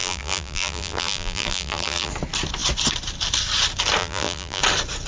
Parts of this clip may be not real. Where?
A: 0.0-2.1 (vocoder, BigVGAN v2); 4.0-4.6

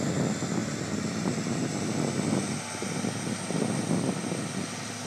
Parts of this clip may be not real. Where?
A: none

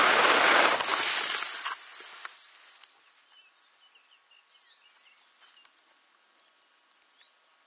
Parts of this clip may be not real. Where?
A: none

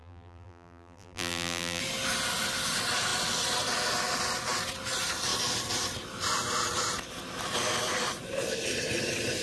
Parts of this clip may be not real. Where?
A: 0.0-1.8 (vocoder, BigVGAN v2)

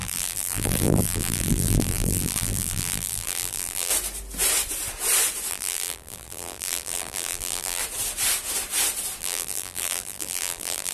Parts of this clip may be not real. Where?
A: 0.0-3.9 (vocoder, BigVGAN v2); 5.5-7.8; 9.2-10.9

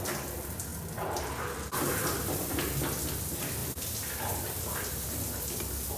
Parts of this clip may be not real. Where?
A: 0.7-1.2 (vocoder, BigVGAN v2); 3.6-4.6

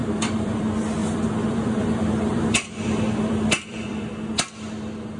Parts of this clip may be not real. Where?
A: 0.0-0.6 (vocoder, BigVGAN v2); 1.0-4.1